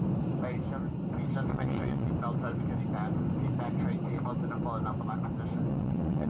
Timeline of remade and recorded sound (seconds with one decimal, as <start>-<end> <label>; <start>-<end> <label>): 0.0-1.5 recorded; 1.5-2.1 remade; 2.1-5.7 recorded; 5.7-6.3 remade